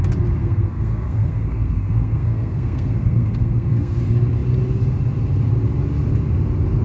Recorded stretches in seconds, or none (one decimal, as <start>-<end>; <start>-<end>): 0.0-0.4; 4.0-6.8